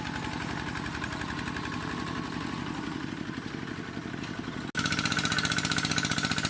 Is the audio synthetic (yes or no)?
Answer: no